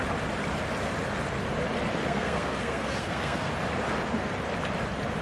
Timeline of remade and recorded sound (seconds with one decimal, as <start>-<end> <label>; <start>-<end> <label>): 0.0-2.0 recorded; 2.0-3.5 remade; 3.5-5.2 recorded